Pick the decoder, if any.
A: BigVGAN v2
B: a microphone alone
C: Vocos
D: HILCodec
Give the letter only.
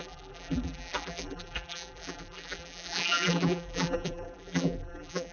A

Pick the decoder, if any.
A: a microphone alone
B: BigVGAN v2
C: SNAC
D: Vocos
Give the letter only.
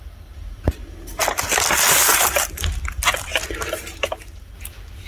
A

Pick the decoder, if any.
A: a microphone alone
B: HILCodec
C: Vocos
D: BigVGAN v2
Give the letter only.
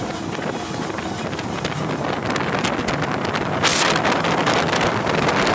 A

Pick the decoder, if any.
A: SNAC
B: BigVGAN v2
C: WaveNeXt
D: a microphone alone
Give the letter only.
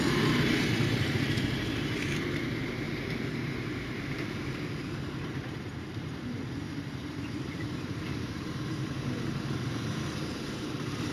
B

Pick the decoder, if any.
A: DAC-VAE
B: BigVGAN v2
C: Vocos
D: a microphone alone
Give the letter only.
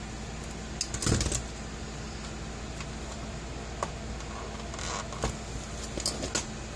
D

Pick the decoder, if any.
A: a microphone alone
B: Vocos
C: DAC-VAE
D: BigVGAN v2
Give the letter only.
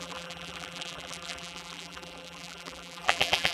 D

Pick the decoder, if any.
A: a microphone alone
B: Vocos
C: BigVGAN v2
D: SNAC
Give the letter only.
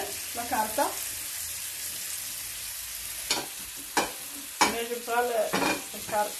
A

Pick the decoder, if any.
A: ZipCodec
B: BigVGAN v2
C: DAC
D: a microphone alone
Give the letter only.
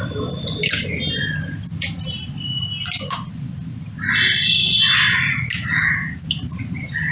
D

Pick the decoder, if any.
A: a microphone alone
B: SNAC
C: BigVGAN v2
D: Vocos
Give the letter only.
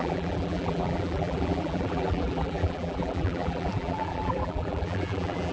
C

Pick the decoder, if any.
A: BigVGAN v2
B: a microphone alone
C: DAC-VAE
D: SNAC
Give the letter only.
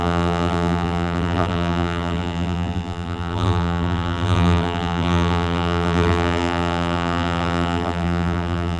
A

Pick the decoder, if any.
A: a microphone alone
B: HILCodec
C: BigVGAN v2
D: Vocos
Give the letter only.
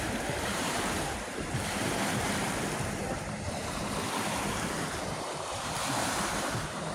C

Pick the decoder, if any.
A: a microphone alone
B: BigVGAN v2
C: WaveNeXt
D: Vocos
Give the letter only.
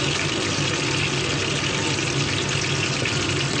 A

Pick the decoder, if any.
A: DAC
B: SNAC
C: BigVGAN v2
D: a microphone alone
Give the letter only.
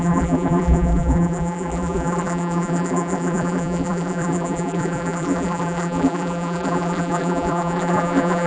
C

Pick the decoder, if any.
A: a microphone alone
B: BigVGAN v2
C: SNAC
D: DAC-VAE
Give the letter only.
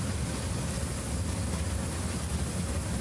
A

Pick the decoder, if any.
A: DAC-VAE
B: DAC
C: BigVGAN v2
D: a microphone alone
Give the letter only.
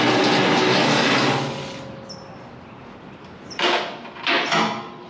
D